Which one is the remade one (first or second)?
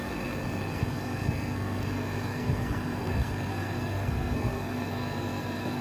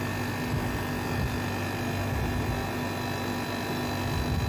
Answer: first